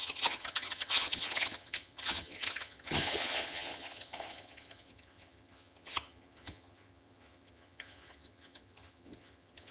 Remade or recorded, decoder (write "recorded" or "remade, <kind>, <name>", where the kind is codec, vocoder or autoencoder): remade, vocoder, HiFi-GAN